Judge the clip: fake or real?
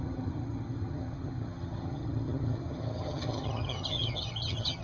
fake